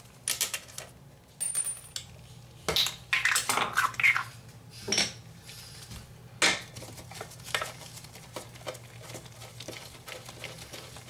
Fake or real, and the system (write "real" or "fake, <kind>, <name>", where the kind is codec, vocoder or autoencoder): real